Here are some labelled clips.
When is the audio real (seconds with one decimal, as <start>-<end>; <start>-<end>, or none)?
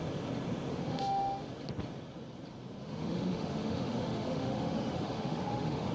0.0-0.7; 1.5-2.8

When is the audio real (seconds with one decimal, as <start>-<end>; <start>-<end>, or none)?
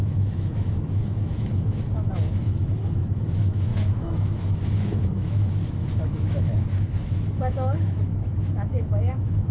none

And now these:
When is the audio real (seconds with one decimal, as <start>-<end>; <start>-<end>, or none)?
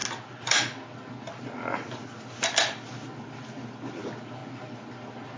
0.0-5.4